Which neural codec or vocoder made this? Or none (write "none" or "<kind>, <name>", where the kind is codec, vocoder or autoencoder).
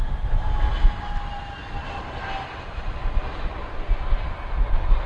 none